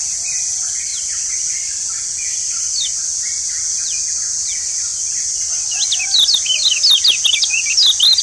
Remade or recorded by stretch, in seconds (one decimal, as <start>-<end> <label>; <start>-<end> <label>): 0.0-8.2 recorded